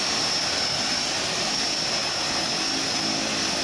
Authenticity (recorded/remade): recorded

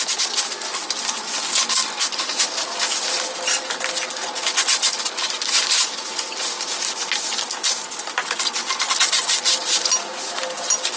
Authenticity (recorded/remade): recorded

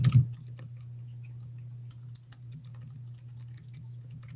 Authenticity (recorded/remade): recorded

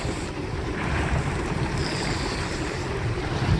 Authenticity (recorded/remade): remade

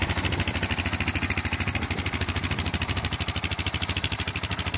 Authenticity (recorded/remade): recorded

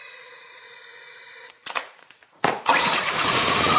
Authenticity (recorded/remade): remade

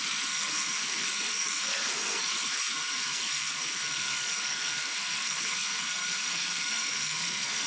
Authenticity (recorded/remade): remade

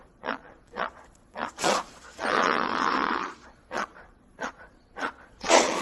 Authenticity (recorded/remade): remade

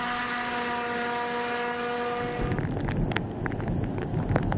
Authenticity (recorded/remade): recorded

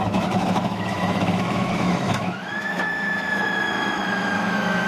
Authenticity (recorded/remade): remade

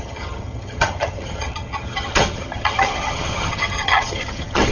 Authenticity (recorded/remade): remade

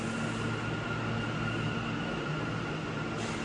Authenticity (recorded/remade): recorded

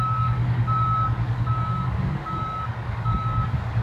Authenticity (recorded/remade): remade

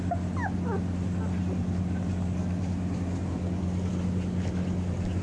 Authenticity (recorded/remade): recorded